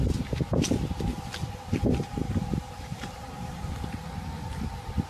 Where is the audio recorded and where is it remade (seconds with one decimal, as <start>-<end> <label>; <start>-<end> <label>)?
0.0-1.8 recorded; 1.8-3.7 remade; 3.7-5.1 recorded